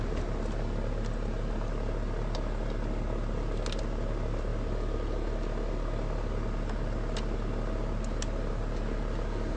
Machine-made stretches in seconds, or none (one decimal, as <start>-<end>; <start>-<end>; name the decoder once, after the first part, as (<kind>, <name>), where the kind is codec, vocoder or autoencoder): none